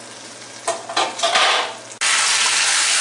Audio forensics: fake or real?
real